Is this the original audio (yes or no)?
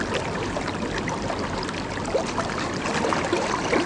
no